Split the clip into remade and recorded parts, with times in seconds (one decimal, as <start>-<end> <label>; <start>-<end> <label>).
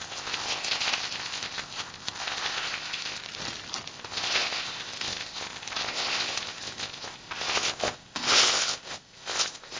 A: 0.0-3.2 remade; 3.2-3.9 recorded; 3.9-9.8 remade